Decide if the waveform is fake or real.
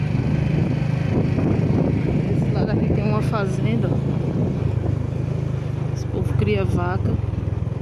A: real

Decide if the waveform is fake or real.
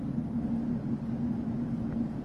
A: real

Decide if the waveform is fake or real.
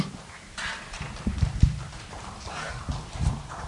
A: fake